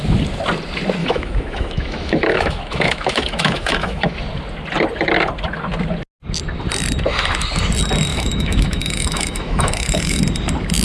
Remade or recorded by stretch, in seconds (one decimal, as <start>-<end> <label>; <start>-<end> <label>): 0.0-1.0 recorded; 1.0-4.2 remade; 4.2-8.1 recorded; 8.1-10.2 remade; 10.2-10.8 recorded